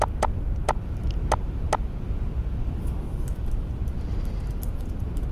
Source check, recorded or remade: recorded